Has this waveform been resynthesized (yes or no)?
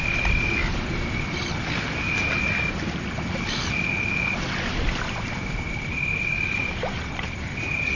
no